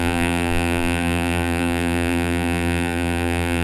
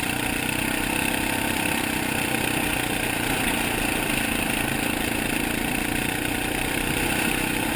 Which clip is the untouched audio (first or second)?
second